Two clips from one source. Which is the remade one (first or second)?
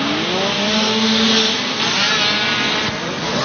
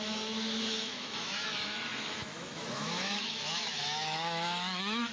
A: second